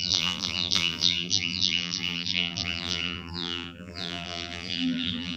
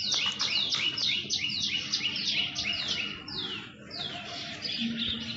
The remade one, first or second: first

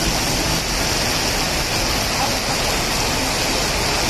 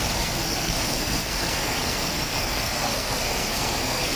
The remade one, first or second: second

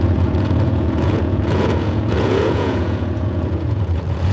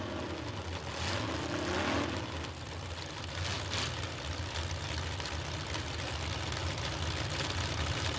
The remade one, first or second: first